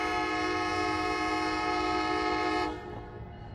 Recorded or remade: recorded